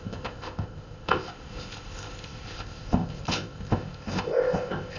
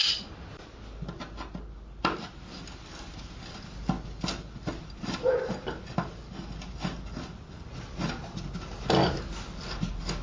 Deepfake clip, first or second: first